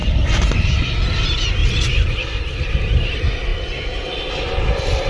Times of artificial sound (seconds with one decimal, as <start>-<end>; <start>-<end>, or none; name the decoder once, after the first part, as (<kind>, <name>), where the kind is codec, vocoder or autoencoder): 1.6-2.5 (vocoder, BigVGAN v2)